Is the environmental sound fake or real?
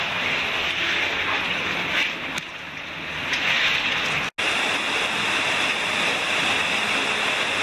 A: real